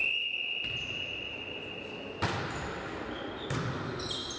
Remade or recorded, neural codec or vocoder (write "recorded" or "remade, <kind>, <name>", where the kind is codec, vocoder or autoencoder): recorded